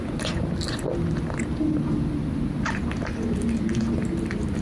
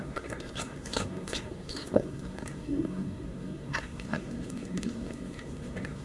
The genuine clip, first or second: first